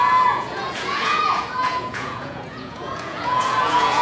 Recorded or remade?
remade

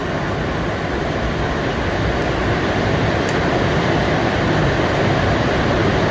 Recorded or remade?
recorded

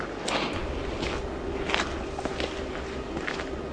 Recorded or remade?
recorded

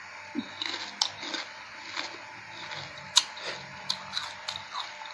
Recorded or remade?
recorded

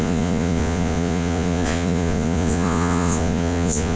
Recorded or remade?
remade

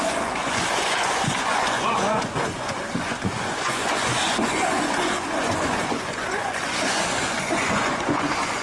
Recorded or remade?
remade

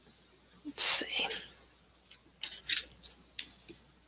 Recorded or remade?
recorded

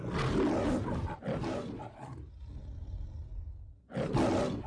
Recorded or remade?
recorded